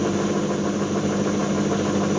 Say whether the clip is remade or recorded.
recorded